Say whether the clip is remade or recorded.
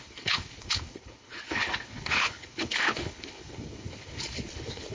remade